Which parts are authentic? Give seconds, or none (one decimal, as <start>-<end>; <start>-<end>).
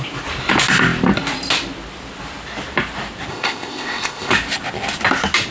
0.0-3.3; 4.3-5.5